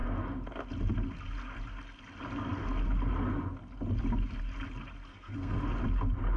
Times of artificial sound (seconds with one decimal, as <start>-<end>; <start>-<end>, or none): 5.1-5.6